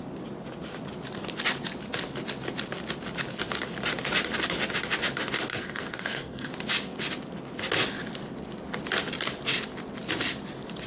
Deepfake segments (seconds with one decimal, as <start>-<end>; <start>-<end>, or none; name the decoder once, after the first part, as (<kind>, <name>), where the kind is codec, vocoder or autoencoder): 5.5-6.5 (codec, SNAC)